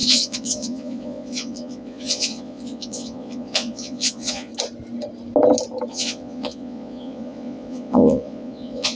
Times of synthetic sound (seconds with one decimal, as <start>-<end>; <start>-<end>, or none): 0.0-4.5; 5.9-9.0